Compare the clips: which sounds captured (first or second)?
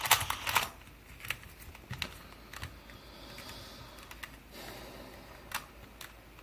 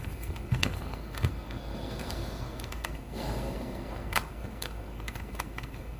first